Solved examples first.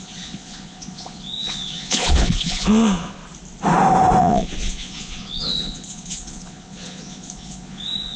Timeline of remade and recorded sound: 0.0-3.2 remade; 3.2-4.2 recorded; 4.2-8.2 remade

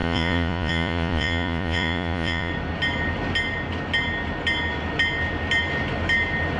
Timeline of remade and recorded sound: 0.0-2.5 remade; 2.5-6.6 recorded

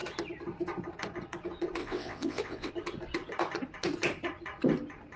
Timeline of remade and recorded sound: 0.0-1.8 recorded; 1.8-2.7 remade; 2.7-5.2 recorded

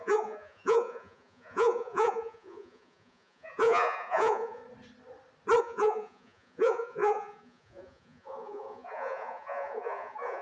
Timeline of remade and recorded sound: 0.0-4.6 remade; 4.6-5.6 recorded; 5.6-10.4 remade

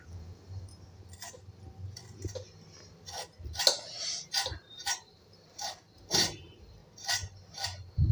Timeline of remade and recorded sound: 0.0-0.7 remade; 0.7-4.0 recorded; 4.0-6.8 remade; 6.8-7.5 recorded; 7.5-8.1 remade